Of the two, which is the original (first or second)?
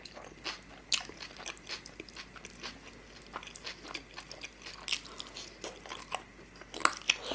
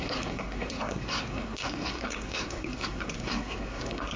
first